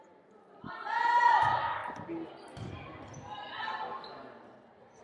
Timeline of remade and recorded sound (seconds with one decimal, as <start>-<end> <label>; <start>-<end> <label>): 0.0-5.0 recorded